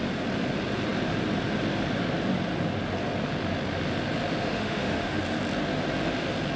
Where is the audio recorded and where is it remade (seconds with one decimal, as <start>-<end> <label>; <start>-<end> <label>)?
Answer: 0.0-4.4 recorded; 4.4-5.2 remade; 5.2-6.6 recorded